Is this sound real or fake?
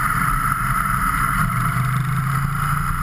real